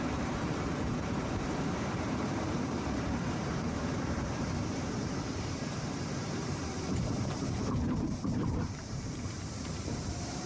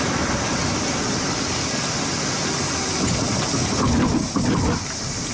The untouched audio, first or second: second